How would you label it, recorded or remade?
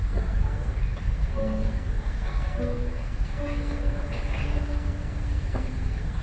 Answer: remade